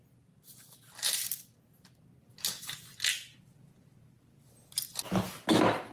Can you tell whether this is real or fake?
real